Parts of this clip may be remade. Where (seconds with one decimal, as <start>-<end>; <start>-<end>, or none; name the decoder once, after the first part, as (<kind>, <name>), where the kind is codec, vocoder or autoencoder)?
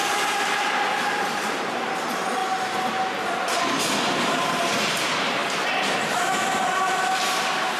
0.0-1.6 (vocoder, BigVGAN v2)